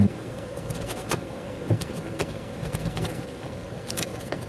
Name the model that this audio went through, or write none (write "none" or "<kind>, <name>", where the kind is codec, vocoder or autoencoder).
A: codec, SNAC